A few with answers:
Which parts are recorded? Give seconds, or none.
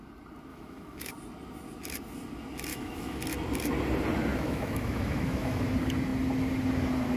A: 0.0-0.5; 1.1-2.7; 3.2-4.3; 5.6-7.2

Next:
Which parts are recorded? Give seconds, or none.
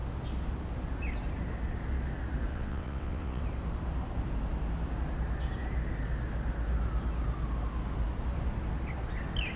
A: 0.0-2.5; 3.4-9.6